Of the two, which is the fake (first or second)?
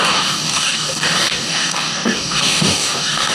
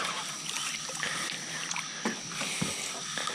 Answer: first